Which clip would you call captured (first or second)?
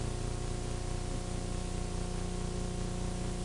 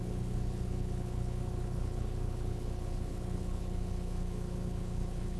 first